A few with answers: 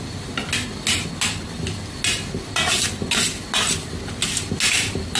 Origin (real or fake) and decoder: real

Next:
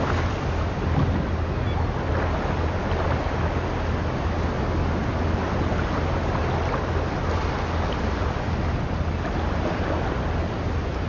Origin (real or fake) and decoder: real